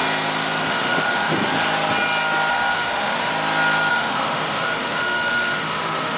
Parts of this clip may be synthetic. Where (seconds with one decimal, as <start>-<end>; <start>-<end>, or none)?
0.7-1.5; 2.5-3.3; 3.9-6.2